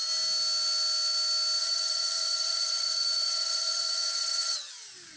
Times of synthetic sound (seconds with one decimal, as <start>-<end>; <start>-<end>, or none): 1.6-4.7